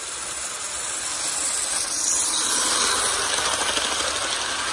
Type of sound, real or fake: real